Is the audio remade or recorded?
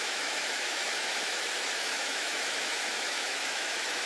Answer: remade